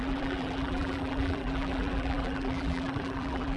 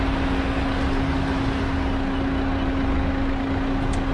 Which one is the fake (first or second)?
first